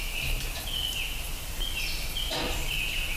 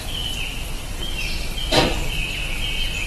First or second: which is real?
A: first